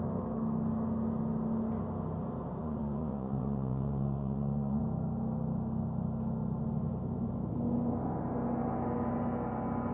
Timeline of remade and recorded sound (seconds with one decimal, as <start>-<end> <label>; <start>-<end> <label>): 0.0-2.6 recorded; 2.6-4.8 remade; 4.8-9.9 recorded